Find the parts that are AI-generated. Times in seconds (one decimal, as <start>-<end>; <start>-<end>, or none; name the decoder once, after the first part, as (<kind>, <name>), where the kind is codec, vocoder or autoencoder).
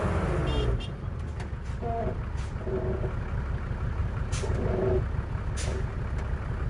4.0-4.6 (vocoder, BigVGAN v2)